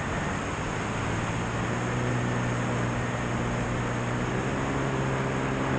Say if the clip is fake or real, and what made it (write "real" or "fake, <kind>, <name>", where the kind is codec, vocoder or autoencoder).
real